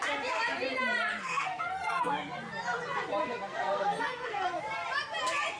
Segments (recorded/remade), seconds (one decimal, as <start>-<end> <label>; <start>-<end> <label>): 0.0-1.1 recorded; 1.1-2.1 remade; 2.1-3.2 recorded; 3.2-4.6 remade; 4.6-5.6 recorded